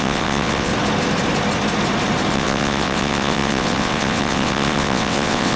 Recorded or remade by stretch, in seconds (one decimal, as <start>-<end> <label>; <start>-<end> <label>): 0.0-0.7 remade; 0.7-2.3 recorded; 2.3-5.6 remade